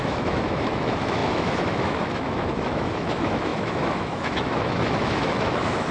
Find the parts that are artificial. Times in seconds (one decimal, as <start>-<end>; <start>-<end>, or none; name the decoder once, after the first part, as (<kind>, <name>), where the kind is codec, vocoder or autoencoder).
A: 0.0-5.9 (autoencoder, DAC-VAE)